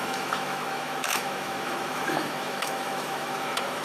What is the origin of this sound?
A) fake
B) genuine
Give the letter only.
A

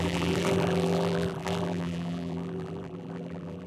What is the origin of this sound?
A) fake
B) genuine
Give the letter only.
A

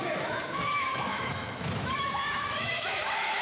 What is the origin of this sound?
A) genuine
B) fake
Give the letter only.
B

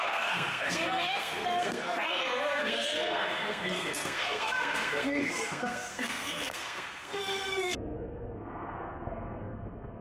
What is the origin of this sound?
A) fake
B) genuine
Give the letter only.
A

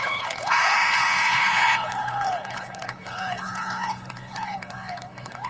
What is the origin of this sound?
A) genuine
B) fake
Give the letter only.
B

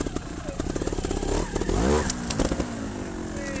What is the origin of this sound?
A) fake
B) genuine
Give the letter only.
B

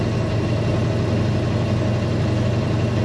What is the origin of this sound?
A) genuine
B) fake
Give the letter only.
A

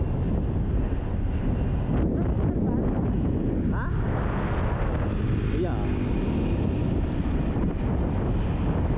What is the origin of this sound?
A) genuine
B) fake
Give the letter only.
A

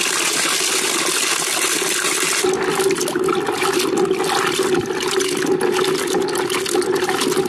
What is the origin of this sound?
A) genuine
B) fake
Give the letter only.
A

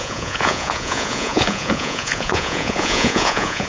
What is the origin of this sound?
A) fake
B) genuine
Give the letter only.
A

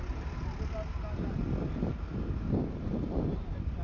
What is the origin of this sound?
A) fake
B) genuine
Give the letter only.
B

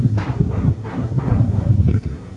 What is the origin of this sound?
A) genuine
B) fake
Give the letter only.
B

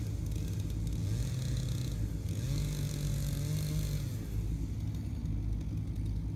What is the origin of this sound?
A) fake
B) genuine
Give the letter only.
B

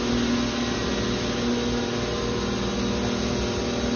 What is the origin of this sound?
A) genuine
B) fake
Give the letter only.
A